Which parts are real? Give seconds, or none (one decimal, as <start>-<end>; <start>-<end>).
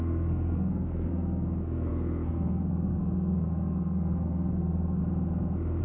5.0-5.8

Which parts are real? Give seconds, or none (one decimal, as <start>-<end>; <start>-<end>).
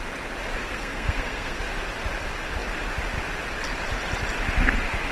0.0-0.6; 1.6-5.1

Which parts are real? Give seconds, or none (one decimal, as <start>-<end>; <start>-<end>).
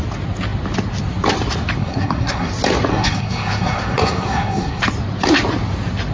0.0-1.8; 2.5-2.9; 4.8-6.1